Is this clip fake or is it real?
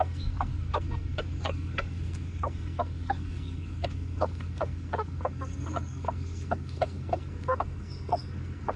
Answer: fake